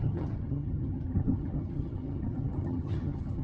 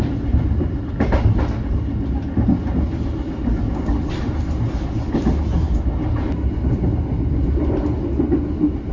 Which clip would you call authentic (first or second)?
second